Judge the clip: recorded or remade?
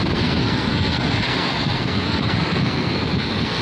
remade